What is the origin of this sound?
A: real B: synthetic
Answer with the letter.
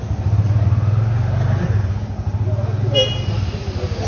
A